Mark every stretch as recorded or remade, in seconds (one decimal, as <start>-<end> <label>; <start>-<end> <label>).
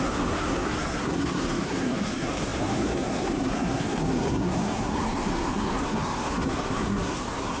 0.0-7.6 remade